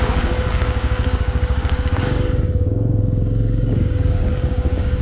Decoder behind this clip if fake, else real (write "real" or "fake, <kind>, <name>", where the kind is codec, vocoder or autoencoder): fake, codec, DAC